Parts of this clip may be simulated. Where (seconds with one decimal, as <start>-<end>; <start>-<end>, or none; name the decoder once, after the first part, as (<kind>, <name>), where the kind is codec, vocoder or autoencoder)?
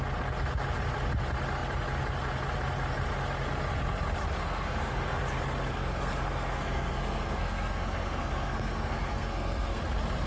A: 4.4-5.2 (codec, SNAC); 5.7-9.8